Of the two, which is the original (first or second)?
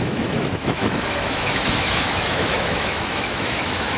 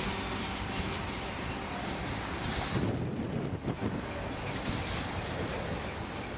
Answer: second